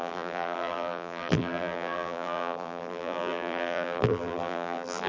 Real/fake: fake